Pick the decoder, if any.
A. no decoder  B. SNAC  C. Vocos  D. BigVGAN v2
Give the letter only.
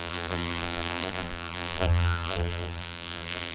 D